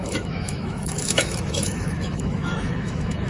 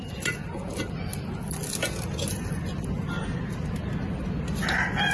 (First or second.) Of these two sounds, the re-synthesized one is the first